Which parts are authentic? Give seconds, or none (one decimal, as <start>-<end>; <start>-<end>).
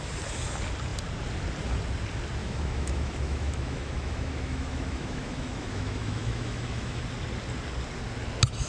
0.0-2.4; 7.0-8.7